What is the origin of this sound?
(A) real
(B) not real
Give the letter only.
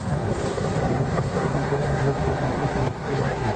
B